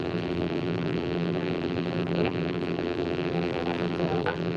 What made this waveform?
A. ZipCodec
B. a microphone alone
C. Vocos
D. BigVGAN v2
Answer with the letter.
D